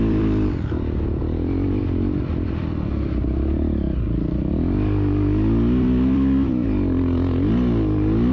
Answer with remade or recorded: remade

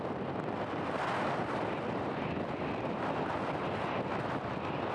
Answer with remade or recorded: recorded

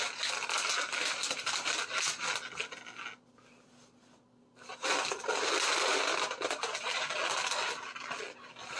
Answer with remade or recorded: recorded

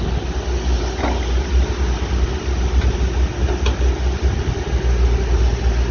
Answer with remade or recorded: recorded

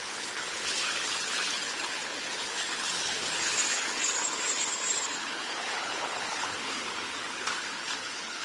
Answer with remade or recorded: remade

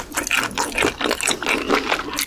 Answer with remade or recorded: recorded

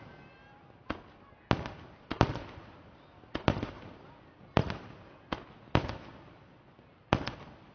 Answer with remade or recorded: recorded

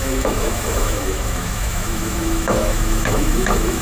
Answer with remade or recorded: remade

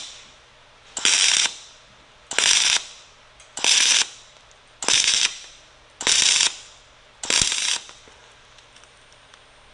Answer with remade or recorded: recorded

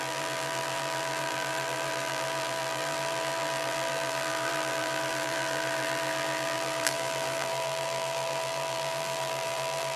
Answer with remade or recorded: remade